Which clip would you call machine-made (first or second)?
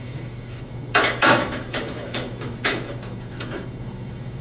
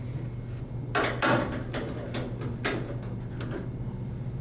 first